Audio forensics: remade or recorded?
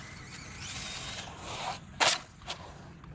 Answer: recorded